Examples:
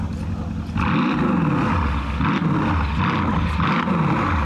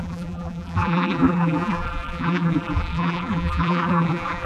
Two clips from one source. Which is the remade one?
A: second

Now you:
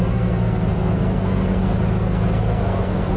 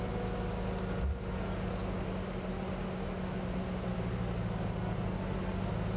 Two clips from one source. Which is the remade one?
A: first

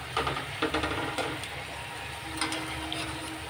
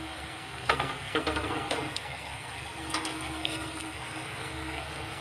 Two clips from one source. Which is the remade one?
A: second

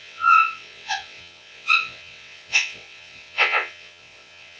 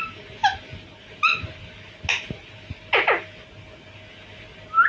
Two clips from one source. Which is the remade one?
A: first